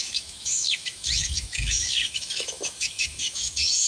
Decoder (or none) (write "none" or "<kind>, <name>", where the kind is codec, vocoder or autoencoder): autoencoder, DAC-VAE